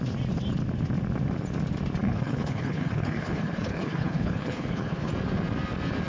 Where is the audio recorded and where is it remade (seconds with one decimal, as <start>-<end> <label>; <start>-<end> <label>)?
0.0-2.0 recorded; 2.0-5.1 remade; 5.1-6.1 recorded